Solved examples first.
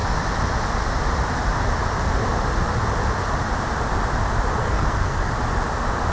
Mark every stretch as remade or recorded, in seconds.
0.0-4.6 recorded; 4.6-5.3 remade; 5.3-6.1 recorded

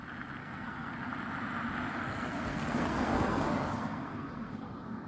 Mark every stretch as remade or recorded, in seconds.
0.0-0.4 recorded; 0.4-0.9 remade; 0.9-1.9 recorded; 1.9-5.1 remade

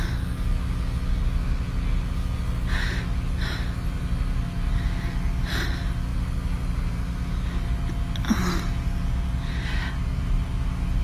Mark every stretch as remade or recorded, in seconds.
0.0-11.0 recorded

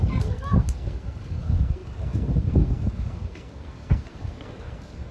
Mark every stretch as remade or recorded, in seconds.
0.0-5.1 remade

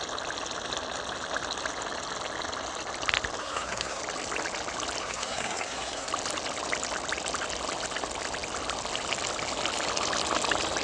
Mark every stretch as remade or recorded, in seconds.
0.0-3.4 recorded; 3.4-4.0 remade; 4.0-5.0 recorded; 5.0-6.1 remade; 6.1-10.8 recorded